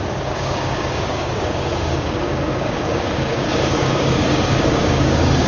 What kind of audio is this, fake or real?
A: fake